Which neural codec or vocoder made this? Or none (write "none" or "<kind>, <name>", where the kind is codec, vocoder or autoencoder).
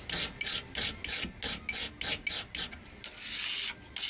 none